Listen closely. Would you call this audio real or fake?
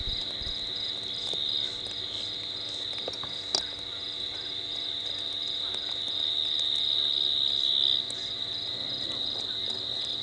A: real